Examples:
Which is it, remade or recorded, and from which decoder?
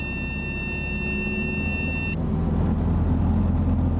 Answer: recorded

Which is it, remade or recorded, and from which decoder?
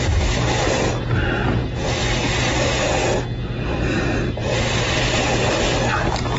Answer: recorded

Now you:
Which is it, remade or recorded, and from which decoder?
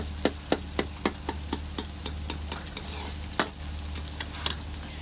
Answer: recorded